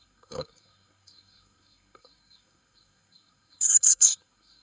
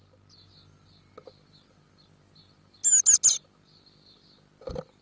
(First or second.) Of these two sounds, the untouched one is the second